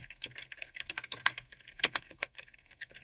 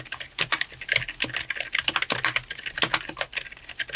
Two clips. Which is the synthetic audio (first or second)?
first